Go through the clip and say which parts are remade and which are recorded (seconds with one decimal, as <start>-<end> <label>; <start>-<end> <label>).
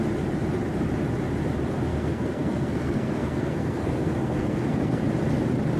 0.0-1.9 recorded; 1.9-5.0 remade; 5.0-5.8 recorded